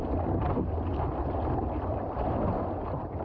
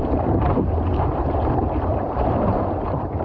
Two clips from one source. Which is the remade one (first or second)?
second